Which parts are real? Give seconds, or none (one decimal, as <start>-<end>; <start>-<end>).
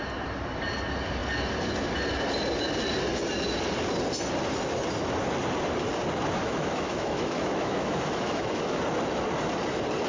0.0-6.4; 8.8-10.1